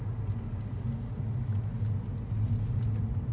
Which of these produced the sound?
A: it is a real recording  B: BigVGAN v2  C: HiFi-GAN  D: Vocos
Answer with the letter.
A